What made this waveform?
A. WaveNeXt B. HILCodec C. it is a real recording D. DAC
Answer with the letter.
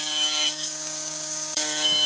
D